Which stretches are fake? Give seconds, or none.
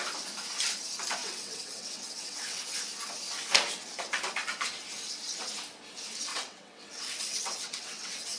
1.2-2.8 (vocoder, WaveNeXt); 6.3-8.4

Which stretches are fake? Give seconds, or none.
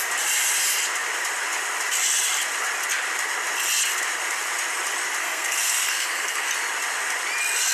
5.2-6.5 (codec, SNAC)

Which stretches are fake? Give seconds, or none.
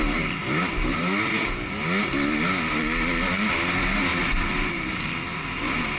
4.1-5.1 (vocoder, BigVGAN v2)